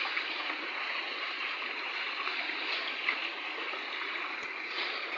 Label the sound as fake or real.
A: fake